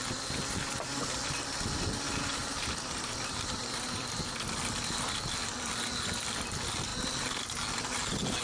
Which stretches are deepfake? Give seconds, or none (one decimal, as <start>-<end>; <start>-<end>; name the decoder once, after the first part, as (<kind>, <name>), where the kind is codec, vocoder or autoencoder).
2.4-4.9 (vocoder, BigVGAN v2)